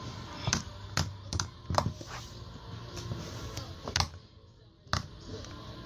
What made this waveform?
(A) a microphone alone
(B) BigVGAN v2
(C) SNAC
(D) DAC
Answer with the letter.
A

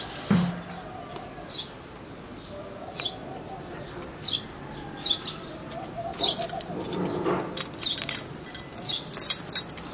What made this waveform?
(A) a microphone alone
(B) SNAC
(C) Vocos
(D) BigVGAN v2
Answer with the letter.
A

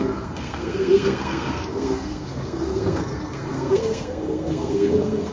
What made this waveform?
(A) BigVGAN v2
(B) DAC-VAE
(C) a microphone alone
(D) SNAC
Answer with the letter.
D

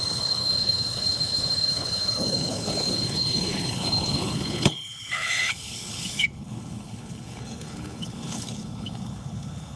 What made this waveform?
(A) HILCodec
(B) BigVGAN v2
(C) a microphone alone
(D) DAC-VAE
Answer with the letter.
A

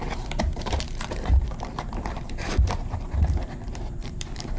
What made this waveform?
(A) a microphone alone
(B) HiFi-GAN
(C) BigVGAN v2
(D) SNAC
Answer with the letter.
C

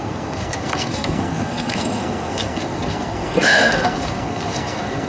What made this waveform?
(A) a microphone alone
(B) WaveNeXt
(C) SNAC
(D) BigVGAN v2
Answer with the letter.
C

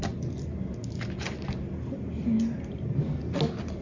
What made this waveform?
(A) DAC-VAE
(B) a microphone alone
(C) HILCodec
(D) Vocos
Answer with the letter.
B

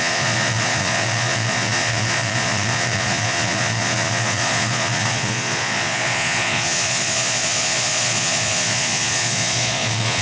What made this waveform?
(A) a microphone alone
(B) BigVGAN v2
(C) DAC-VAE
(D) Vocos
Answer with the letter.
D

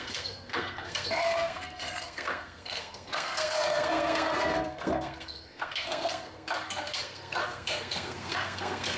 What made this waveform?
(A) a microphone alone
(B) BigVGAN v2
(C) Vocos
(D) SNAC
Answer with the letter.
D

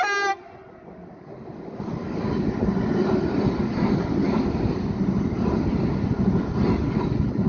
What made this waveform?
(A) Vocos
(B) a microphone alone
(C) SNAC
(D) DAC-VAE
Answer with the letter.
B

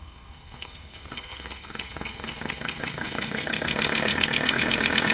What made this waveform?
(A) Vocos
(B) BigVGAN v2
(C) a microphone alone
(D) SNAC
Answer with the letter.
D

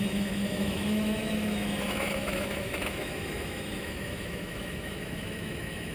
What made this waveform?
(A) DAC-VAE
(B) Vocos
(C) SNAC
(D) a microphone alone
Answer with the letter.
A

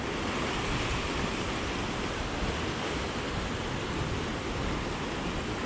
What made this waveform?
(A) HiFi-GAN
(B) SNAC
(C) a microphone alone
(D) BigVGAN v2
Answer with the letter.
C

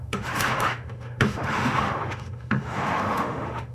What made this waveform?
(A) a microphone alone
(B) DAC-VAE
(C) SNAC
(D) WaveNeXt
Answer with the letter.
B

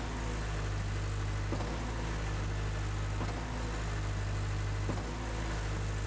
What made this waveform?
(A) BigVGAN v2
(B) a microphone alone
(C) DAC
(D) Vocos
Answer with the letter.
B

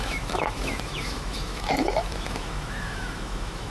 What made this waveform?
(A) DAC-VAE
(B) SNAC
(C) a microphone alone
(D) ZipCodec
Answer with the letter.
A